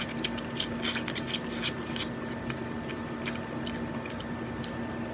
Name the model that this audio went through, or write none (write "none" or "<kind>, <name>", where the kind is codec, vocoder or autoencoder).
none